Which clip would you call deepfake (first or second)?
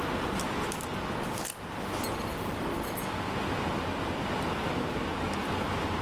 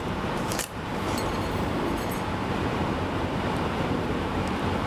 second